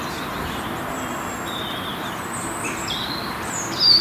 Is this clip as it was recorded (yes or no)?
yes